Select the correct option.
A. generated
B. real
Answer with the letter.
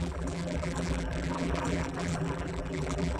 A